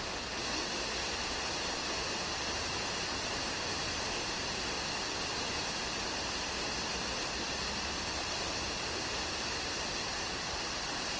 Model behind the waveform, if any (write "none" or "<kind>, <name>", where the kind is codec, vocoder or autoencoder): none